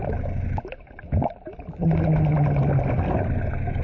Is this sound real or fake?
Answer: real